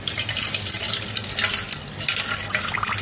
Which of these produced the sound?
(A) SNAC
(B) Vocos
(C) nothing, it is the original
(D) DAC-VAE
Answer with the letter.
C